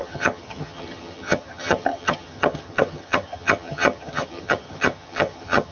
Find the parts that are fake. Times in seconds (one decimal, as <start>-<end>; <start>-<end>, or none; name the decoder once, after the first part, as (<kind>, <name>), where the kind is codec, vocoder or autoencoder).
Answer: 0.0-5.7 (vocoder, HiFi-GAN)